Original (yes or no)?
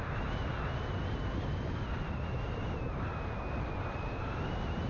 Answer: yes